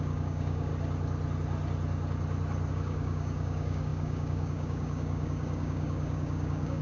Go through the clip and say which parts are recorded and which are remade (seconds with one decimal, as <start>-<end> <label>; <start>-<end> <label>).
0.0-0.7 remade; 0.7-2.7 recorded; 2.7-6.8 remade